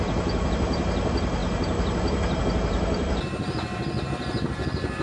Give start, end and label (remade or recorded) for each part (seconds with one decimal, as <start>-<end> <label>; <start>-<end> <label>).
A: 0.0-5.0 recorded